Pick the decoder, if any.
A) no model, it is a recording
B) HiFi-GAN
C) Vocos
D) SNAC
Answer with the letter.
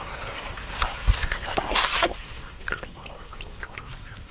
D